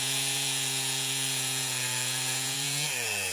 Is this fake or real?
fake